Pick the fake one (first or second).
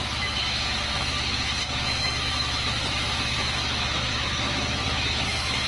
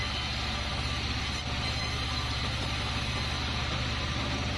first